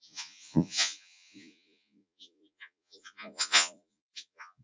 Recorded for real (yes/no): no